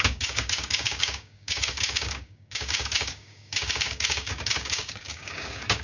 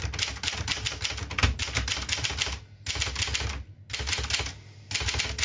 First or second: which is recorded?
second